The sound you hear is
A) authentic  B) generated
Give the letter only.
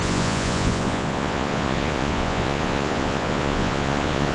B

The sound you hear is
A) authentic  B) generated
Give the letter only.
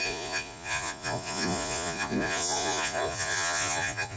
B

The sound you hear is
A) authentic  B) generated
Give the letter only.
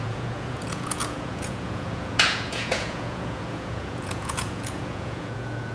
B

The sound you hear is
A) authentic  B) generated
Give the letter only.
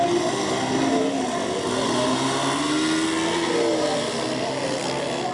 A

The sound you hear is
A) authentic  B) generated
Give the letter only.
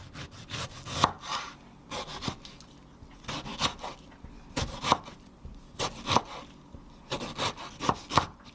A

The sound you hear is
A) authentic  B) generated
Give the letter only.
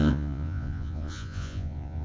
B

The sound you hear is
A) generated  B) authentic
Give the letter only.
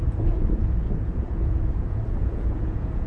A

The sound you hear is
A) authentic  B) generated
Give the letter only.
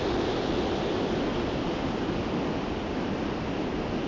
A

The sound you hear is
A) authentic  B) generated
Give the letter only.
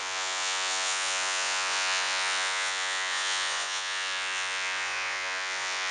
B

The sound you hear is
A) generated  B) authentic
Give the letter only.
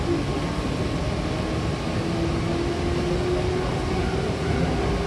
B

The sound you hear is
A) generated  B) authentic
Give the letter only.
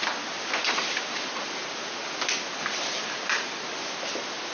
B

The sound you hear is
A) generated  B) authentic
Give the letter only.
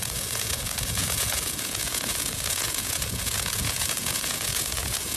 A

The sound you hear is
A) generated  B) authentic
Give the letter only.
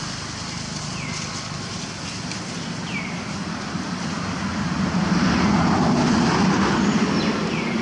B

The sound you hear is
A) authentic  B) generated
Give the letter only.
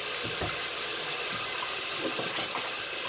A